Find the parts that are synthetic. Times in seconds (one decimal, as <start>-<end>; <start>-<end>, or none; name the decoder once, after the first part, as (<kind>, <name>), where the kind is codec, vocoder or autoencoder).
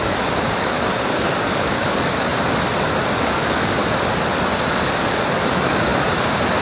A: 0.0-2.3 (codec, DAC); 3.2-3.8; 4.7-5.9